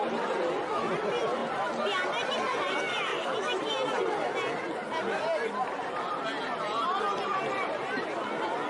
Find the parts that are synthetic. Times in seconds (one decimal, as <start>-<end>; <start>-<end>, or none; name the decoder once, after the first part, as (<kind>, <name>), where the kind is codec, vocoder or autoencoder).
none